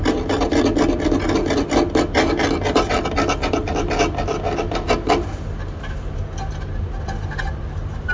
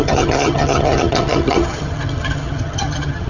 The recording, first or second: first